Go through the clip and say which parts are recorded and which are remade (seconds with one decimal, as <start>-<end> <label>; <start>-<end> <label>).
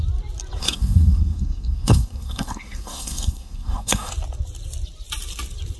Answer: 0.0-0.6 recorded; 0.6-4.1 remade; 4.1-5.8 recorded